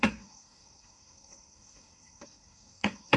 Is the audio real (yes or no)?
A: no